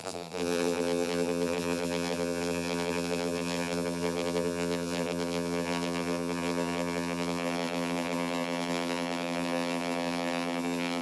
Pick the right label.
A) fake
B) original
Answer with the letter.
A